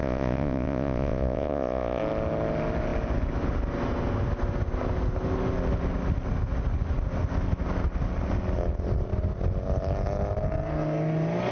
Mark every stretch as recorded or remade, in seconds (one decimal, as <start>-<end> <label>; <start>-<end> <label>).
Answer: 0.0-2.0 remade; 2.0-11.5 recorded